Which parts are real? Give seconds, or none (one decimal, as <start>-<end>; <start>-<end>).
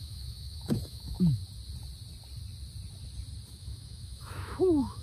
1.4-3.5